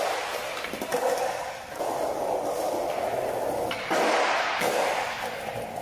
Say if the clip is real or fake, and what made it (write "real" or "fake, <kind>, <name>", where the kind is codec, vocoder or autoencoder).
real